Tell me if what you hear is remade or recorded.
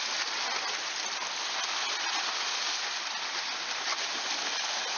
recorded